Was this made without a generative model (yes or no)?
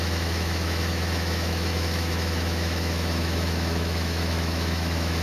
no